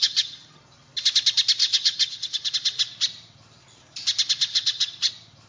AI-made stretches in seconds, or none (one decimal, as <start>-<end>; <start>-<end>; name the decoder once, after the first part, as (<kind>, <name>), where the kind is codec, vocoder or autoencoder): 0.0-0.6 (vocoder, HiFi-GAN); 1.6-2.5; 4.5-5.1